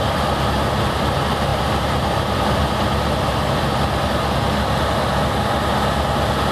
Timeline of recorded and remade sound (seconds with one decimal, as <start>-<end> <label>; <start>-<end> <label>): 0.0-6.5 recorded